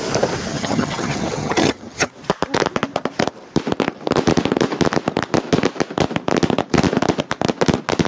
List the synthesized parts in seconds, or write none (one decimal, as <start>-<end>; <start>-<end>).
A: 0.5-2.1